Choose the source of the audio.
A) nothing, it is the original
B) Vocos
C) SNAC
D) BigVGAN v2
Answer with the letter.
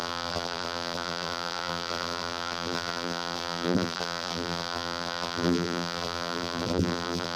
D